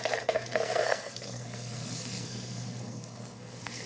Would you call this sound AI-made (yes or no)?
yes